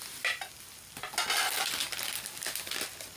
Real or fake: real